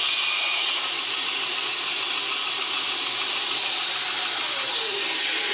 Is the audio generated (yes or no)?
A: no